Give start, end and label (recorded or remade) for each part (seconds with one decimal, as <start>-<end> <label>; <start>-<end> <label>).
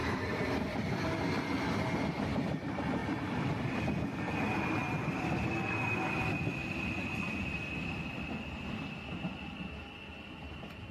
0.0-1.4 remade; 1.4-3.0 recorded; 3.0-3.8 remade; 3.8-10.9 recorded